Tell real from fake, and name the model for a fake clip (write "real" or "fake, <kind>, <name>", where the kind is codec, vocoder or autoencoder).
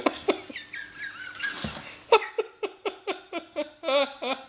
real